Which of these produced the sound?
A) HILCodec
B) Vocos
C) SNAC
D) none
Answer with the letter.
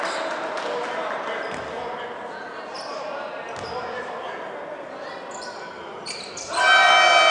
D